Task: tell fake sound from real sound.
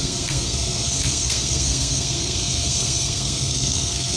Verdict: fake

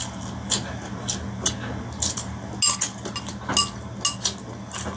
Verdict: real